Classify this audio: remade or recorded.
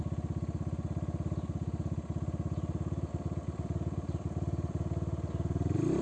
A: recorded